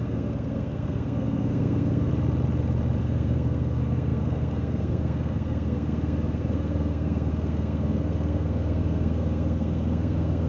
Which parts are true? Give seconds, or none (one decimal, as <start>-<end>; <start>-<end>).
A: 2.1-3.0